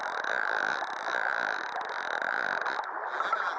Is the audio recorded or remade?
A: recorded